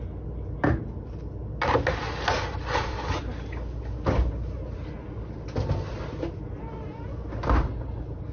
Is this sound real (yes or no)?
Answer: yes